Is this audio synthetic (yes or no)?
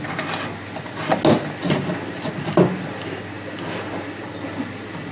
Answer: no